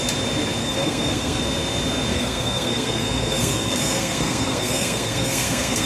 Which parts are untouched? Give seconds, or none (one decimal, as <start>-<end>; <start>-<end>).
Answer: 0.0-0.6; 1.4-2.1